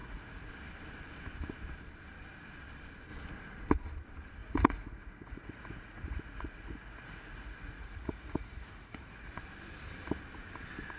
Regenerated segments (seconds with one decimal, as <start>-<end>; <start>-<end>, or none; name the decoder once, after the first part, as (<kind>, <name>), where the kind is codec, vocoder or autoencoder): 0.0-0.5 (vocoder, Vocos); 4.4-9.4